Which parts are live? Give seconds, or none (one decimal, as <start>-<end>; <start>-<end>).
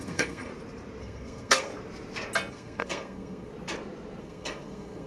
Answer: 0.5-1.0; 1.7-2.5; 3.5-4.2